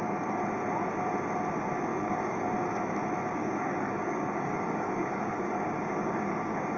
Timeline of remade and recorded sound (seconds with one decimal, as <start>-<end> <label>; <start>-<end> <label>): 0.0-1.9 recorded; 1.9-2.5 remade; 2.5-3.4 recorded; 3.4-6.8 remade